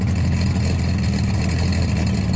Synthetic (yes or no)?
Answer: no